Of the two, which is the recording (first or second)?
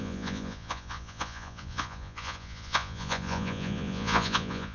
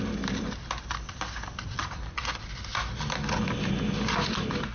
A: second